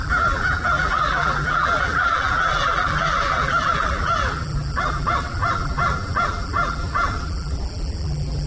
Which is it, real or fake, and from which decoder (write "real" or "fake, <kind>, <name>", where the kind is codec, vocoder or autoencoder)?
fake, vocoder, BigVGAN v2